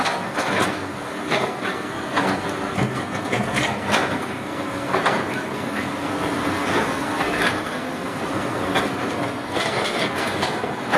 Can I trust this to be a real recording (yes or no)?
no